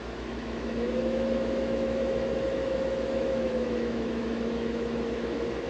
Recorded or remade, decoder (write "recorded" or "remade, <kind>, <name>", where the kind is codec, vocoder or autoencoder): remade, autoencoder, DAC-VAE